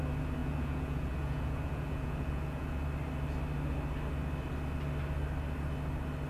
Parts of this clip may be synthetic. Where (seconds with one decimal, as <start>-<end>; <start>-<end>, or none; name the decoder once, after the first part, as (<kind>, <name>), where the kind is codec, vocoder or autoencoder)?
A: 0.4-2.8 (vocoder, Vocos)